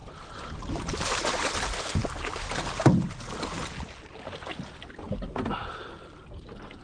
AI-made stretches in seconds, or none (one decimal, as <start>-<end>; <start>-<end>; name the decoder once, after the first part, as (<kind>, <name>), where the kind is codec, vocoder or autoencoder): none